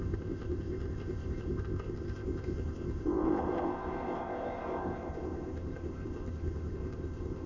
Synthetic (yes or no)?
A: yes